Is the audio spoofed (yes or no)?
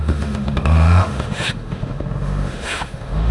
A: yes